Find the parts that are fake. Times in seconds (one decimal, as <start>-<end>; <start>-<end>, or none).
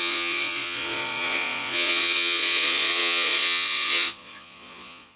0.0-5.2